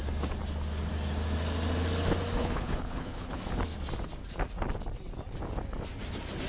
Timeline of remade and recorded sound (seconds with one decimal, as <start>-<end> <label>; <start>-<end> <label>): 0.0-2.4 recorded; 2.4-3.4 remade; 3.4-6.5 recorded